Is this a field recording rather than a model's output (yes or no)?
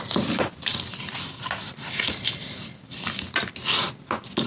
yes